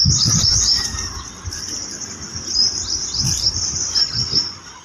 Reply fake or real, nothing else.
fake